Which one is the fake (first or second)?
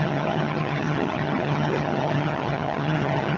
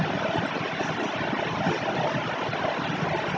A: first